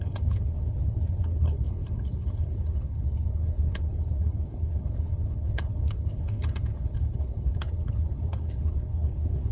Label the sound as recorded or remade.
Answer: remade